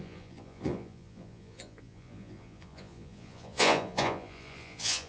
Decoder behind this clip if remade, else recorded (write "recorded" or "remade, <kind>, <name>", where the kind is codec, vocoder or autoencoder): remade, vocoder, Vocos